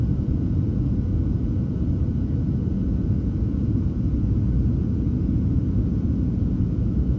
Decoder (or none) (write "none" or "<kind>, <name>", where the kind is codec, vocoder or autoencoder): vocoder, Vocos